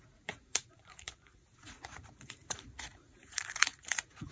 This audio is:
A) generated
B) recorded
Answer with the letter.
A